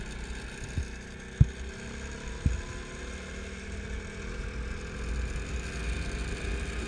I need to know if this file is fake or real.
real